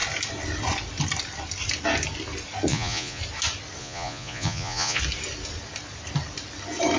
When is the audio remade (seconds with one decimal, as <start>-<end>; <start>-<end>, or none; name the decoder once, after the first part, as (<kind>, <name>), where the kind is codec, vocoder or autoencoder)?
2.7-3.2 (vocoder, Vocos); 3.8-5.0